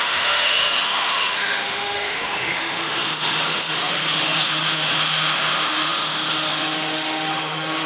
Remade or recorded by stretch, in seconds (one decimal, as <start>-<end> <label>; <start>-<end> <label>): 0.0-7.9 remade